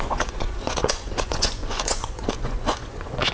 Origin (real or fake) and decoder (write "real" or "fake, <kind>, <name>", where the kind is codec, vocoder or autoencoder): fake, vocoder, Vocos